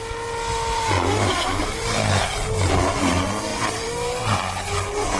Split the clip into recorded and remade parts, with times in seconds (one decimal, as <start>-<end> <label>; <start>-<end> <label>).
0.0-1.6 recorded; 1.6-2.2 remade; 2.2-3.5 recorded; 3.5-4.2 remade; 4.2-5.2 recorded